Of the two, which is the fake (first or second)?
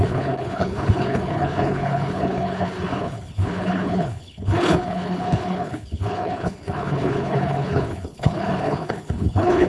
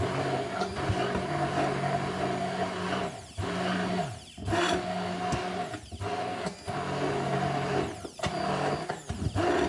first